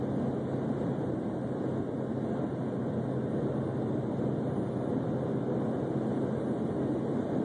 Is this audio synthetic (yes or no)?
no